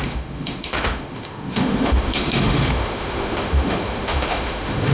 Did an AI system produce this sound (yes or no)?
yes